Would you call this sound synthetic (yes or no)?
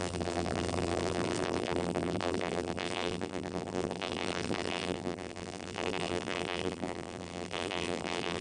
yes